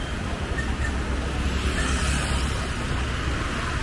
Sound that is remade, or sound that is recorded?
recorded